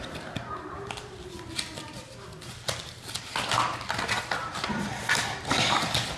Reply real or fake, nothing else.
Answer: real